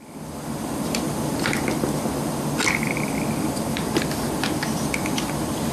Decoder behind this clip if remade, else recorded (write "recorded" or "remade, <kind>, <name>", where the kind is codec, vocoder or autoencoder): recorded